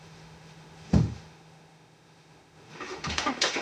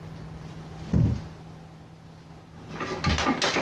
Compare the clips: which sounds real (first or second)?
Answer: second